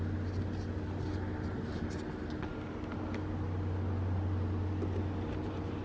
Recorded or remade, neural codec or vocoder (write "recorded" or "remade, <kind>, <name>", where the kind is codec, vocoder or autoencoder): recorded